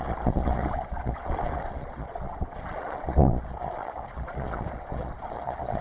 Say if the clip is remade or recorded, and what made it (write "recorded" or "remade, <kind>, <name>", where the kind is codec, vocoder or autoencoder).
remade, vocoder, Vocos